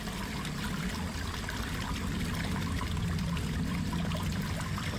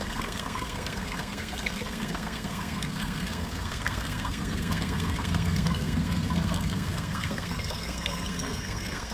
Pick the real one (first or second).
first